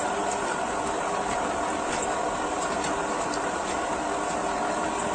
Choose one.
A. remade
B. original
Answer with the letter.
B